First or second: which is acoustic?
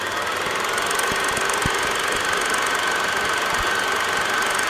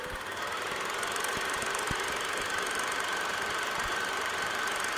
first